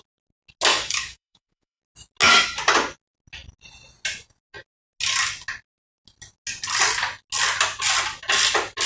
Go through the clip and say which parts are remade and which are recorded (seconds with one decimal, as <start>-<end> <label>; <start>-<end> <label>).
0.0-0.7 recorded; 0.7-1.8 remade; 1.8-8.9 recorded